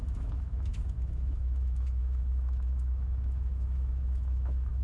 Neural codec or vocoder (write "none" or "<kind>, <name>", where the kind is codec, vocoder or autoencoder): autoencoder, DAC-VAE